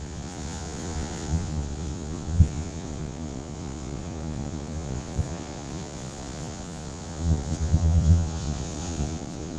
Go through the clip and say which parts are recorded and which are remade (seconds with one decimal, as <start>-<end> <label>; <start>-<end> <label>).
0.0-9.6 remade